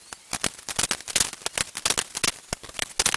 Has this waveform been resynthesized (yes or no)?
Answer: no